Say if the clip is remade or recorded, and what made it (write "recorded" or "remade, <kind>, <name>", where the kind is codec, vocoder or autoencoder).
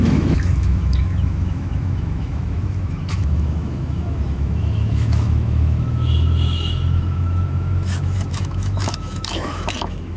remade, autoencoder, DAC-VAE